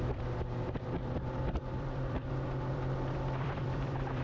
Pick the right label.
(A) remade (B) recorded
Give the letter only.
A